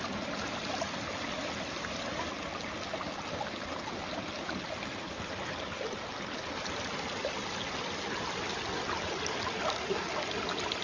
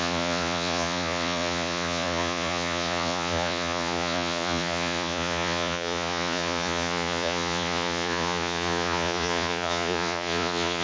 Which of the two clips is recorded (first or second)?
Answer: first